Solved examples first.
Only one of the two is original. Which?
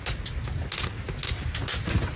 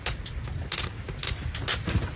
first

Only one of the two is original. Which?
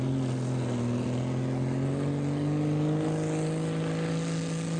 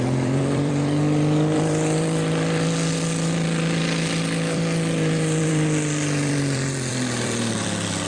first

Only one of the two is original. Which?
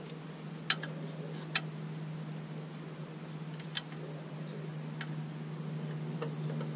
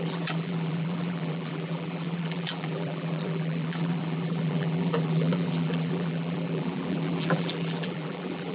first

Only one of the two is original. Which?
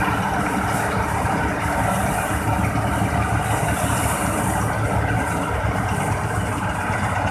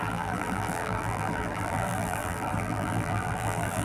first